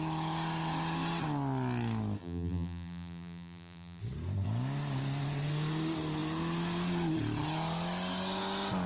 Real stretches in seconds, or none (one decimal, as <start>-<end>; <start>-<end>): 0.0-2.2; 4.0-8.9